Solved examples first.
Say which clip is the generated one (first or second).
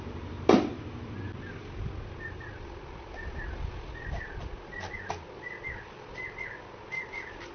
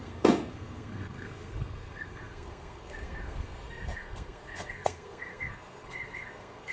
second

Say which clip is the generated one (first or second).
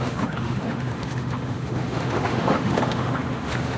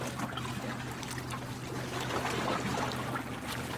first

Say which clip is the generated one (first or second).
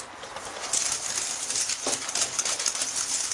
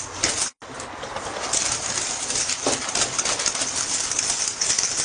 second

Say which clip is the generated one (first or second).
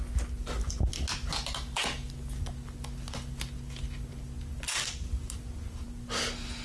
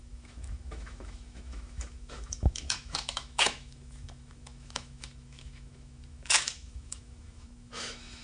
second